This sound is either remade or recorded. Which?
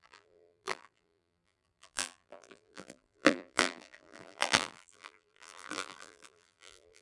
remade